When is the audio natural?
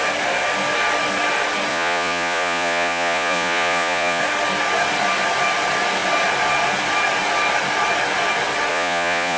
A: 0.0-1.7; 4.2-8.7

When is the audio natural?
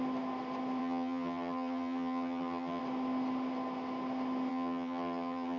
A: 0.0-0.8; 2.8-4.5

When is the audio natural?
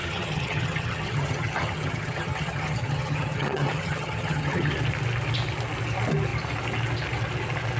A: 4.7-7.8